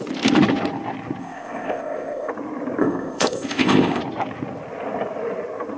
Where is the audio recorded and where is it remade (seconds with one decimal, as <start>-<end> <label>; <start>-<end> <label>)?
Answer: 0.0-1.2 recorded; 1.2-2.3 remade; 2.3-2.8 recorded; 2.8-4.0 remade; 4.0-5.8 recorded

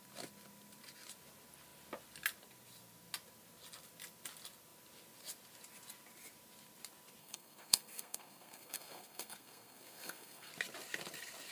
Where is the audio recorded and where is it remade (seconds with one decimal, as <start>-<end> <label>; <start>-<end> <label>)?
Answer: 0.0-7.2 recorded; 7.2-10.5 remade; 10.5-11.5 recorded

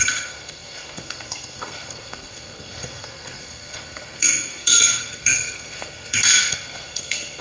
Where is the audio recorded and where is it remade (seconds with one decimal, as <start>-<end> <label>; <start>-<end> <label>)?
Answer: 0.0-7.4 remade

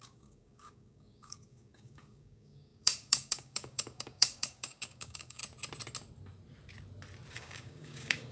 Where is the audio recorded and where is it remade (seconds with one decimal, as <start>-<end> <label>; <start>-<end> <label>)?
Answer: 0.0-5.4 remade; 5.4-7.3 recorded; 7.3-8.3 remade

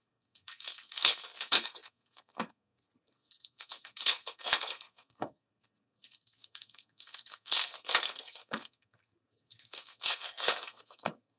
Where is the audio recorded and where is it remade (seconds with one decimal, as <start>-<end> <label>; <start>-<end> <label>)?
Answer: 0.0-11.4 remade

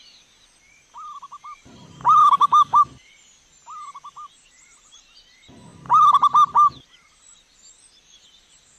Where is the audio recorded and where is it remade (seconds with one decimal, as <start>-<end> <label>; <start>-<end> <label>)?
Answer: 0.0-2.2 recorded; 2.2-2.8 remade; 2.8-8.8 recorded

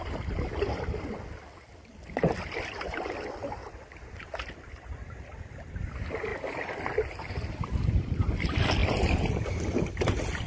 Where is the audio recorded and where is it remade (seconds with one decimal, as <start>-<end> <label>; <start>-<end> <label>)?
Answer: 0.0-10.5 recorded

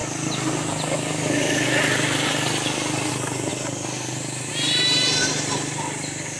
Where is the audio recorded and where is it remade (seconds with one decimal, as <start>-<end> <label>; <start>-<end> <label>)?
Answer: 0.0-6.4 recorded